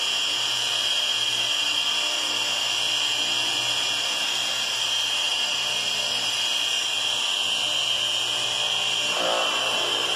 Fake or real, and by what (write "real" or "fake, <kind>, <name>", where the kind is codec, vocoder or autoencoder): real